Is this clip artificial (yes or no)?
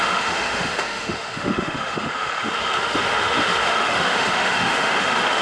yes